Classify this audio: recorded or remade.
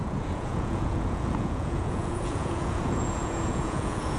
remade